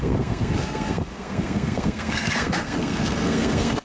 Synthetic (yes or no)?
yes